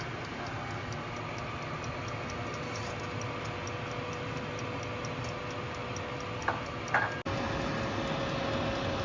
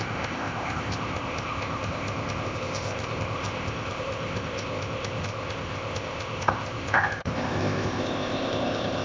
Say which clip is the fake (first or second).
second